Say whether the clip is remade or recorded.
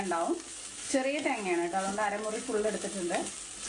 recorded